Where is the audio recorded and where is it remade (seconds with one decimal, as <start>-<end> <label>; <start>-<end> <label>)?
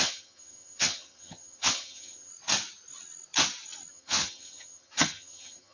0.0-2.3 remade; 2.3-3.9 recorded; 3.9-5.7 remade